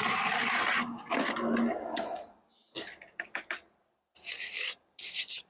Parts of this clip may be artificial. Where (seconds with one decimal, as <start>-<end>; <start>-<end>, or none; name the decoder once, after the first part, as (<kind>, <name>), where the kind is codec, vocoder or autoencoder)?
0.0-0.4 (vocoder, BigVGAN v2); 3.7-5.5